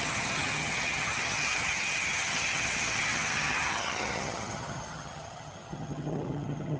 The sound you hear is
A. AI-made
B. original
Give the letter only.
A